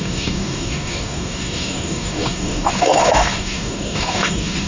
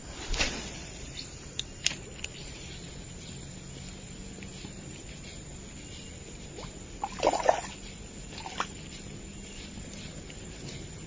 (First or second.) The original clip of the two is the second